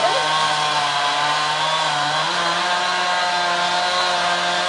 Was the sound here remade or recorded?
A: recorded